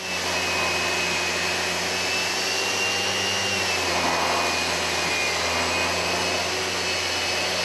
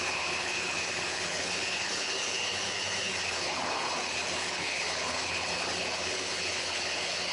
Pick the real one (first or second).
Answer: first